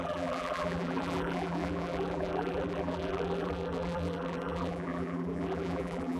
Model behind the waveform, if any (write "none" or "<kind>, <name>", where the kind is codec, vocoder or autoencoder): vocoder, BigVGAN v2